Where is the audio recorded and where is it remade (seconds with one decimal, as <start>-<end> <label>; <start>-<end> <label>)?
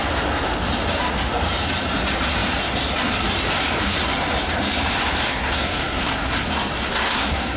0.0-5.3 recorded; 5.3-6.5 remade; 6.5-6.9 recorded; 6.9-7.6 remade